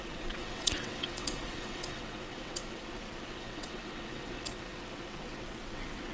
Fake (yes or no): yes